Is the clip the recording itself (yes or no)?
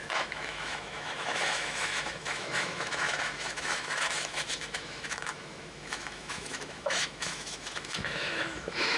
no